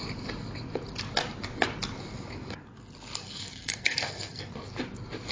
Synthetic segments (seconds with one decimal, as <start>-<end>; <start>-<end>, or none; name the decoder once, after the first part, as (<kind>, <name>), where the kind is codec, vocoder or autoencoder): 3.2-4.5 (codec, SNAC)